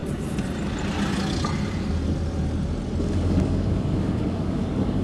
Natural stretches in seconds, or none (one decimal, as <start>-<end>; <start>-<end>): 0.0-3.0